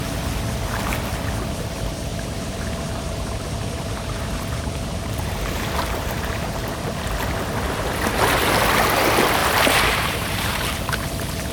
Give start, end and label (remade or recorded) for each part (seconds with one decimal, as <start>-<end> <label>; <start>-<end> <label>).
0.0-2.1 recorded; 2.1-6.8 remade; 6.8-9.4 recorded; 9.4-10.7 remade; 10.7-11.5 recorded